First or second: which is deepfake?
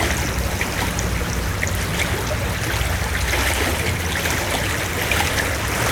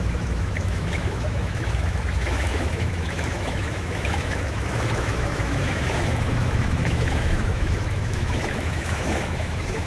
second